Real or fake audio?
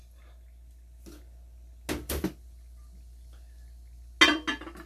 real